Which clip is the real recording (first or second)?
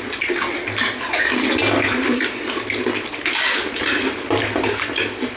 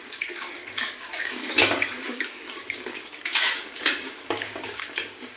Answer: first